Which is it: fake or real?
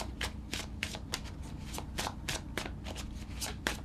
real